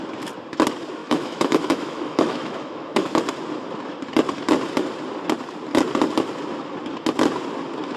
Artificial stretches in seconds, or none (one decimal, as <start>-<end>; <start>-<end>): 1.0-3.2